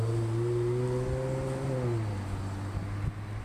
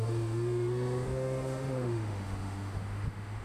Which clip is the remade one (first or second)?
second